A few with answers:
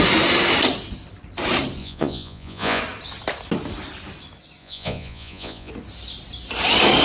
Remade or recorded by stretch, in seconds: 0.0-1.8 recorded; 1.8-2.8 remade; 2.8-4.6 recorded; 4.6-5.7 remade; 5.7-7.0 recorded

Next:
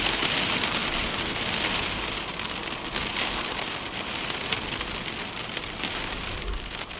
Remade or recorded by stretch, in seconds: 0.0-7.0 recorded

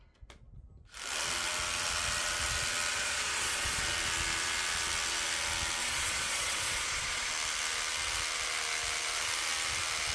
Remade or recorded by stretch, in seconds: 0.0-2.9 recorded; 2.9-3.8 remade; 3.8-5.8 recorded; 5.8-7.3 remade; 7.3-10.1 recorded

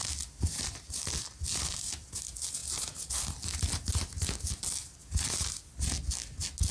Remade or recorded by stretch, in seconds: 0.0-6.7 recorded